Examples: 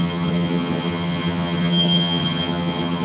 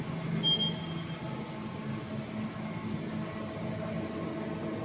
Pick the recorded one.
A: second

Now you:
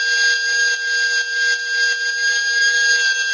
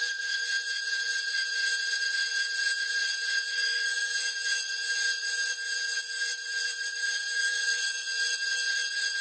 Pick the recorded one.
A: first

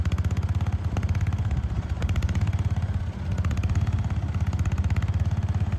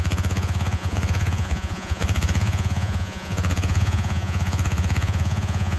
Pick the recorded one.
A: first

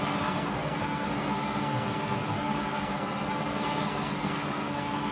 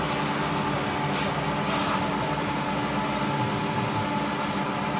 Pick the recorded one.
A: second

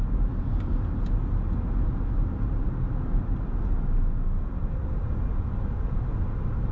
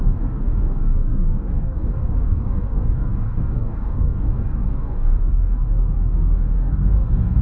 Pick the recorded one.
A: first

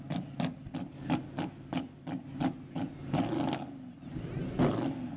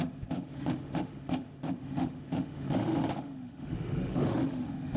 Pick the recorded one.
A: first